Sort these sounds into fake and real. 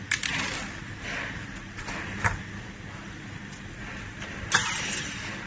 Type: real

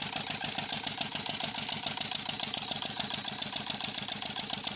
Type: real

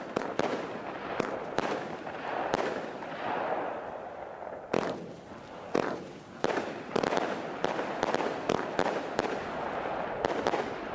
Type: real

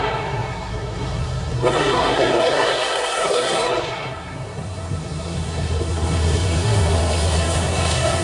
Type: fake